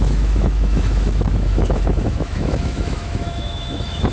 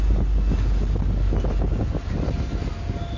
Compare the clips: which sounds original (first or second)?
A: second